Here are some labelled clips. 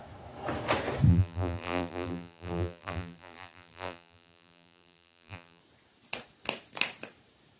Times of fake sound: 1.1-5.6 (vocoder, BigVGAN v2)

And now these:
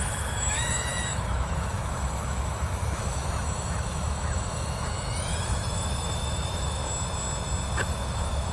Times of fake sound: 0.0-6.8 (autoencoder, DAC-VAE); 7.8-8.5

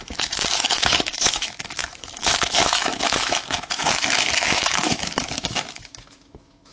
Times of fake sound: 0.0-6.7 (autoencoder, DAC-VAE)

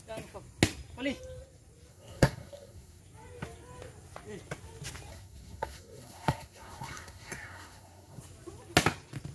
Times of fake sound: 1.9-3.0 (codec, SNAC); 5.1-8.2

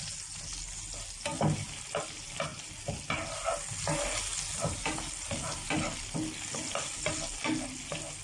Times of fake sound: none